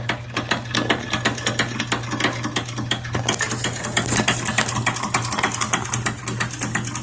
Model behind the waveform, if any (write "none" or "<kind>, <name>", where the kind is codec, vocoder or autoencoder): none